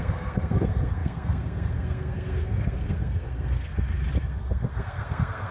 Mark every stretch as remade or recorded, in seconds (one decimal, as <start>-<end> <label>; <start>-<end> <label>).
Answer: 0.0-3.7 remade; 3.7-4.2 recorded; 4.2-5.5 remade